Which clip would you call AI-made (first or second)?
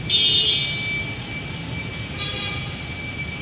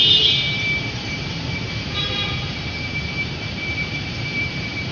second